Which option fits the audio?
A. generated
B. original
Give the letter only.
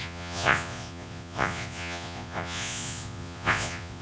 A